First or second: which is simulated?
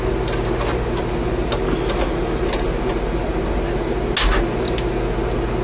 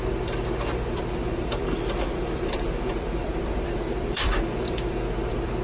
second